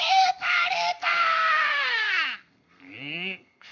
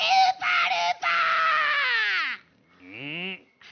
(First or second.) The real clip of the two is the second